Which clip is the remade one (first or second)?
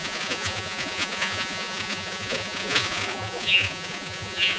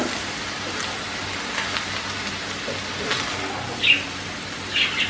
first